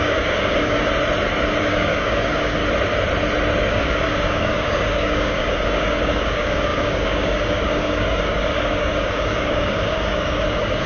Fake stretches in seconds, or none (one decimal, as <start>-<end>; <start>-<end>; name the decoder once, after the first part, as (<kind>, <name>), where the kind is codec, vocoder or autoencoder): 0.0-0.9 (codec, DAC); 1.6-2.6; 3.6-10.9